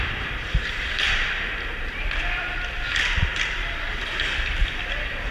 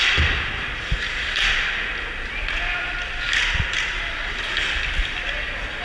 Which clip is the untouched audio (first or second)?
second